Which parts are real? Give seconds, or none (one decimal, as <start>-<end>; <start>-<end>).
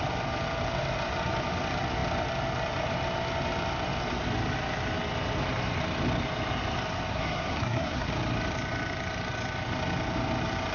0.0-7.1; 8.1-10.7